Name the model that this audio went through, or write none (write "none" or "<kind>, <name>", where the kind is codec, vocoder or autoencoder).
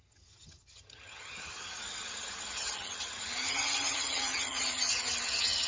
vocoder, HiFi-GAN